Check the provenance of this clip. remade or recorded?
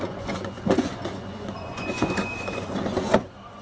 remade